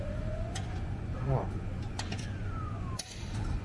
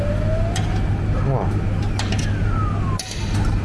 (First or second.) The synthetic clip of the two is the first